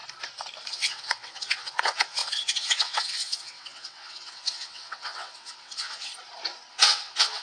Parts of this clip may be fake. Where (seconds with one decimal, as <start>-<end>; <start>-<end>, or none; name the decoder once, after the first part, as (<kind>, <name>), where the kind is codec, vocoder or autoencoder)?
0.7-6.1 (vocoder, WaveNeXt); 6.7-7.4